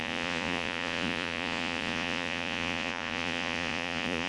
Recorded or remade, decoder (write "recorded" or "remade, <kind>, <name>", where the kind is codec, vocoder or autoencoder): remade, vocoder, Vocos